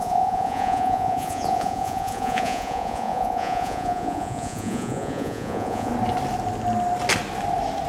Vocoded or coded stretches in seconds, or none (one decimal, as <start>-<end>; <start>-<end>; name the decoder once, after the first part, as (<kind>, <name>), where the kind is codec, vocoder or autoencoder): 0.0-5.9 (vocoder, Vocos)

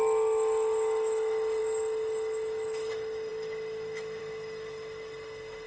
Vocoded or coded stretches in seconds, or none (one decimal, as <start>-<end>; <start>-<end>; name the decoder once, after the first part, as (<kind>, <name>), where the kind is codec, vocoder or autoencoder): 0.0-5.7 (autoencoder, DAC-VAE)